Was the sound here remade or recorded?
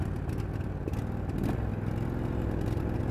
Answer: recorded